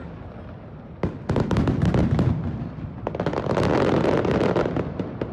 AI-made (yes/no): no